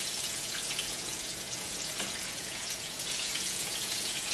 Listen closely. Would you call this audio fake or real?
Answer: fake